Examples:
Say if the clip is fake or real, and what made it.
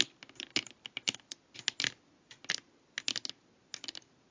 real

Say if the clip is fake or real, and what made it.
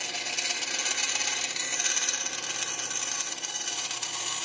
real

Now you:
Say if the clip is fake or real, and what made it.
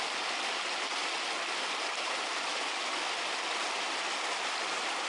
real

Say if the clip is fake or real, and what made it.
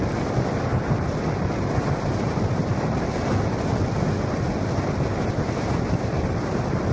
real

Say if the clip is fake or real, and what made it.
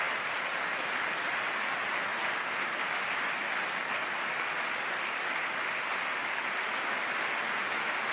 real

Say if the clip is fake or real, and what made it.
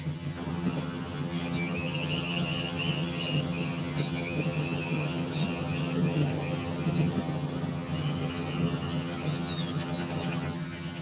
fake, vocoder, HiFi-GAN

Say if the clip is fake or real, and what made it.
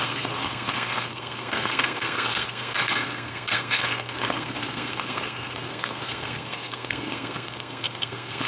fake, codec, SNAC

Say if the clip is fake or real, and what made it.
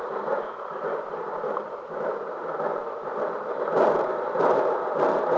fake, vocoder, BigVGAN v2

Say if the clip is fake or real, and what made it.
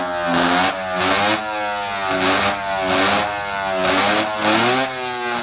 real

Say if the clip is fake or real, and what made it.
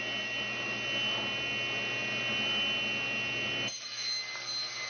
real